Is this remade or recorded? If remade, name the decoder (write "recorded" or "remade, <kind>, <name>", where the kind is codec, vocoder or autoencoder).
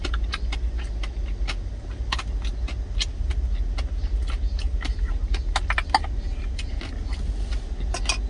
recorded